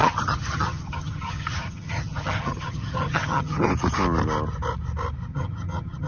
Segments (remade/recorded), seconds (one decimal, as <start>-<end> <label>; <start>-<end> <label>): 0.0-3.7 remade; 3.7-5.3 recorded; 5.3-6.1 remade